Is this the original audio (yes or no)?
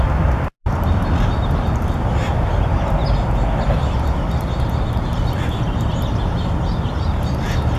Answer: yes